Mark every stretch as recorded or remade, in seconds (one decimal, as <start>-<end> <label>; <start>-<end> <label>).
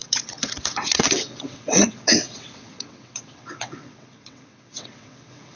0.0-5.6 remade